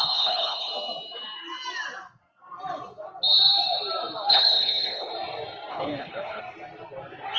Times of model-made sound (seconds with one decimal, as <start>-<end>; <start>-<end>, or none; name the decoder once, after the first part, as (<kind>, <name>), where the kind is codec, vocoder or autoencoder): 0.0-0.7 (codec, HILCodec); 4.3-5.1; 5.7-6.4